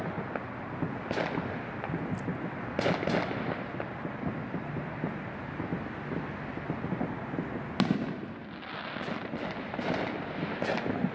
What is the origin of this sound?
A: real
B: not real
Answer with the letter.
A